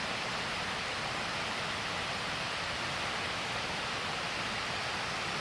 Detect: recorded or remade recorded